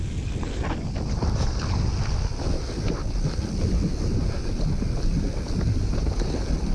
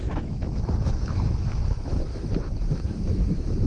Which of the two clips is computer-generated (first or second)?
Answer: second